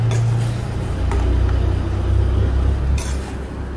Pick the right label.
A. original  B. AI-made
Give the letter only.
A